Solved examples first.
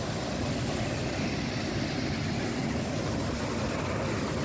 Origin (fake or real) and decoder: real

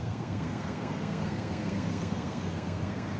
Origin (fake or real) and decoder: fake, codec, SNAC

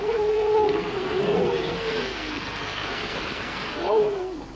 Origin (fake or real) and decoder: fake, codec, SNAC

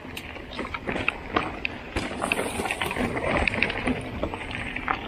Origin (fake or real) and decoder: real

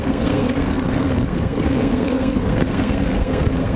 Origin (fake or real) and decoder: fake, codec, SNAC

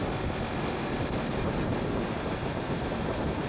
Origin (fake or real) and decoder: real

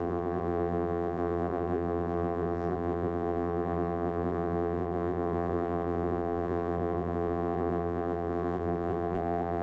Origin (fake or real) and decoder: fake, vocoder, BigVGAN v2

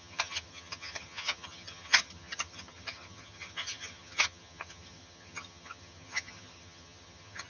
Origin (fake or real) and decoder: fake, vocoder, HiFi-GAN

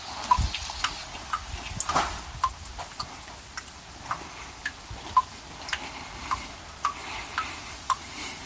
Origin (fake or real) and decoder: real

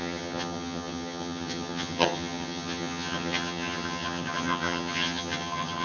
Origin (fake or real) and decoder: fake, vocoder, HiFi-GAN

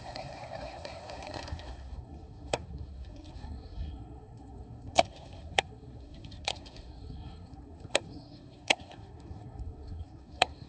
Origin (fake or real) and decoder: fake, codec, SNAC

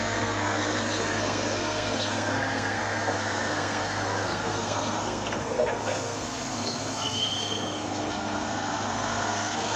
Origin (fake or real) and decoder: fake, codec, SNAC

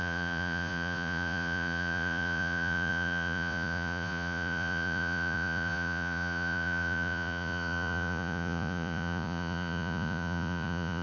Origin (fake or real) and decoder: fake, vocoder, Vocos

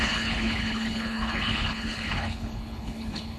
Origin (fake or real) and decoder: fake, codec, HILCodec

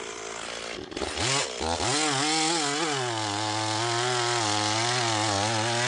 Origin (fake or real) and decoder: real